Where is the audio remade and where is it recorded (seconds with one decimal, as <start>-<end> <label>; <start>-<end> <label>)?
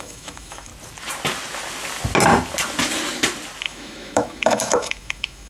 0.0-0.7 remade; 0.7-3.6 recorded; 3.6-5.5 remade